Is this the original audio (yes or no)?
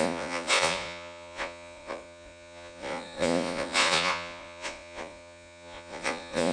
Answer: no